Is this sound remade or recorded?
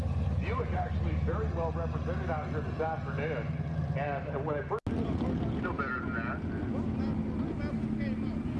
recorded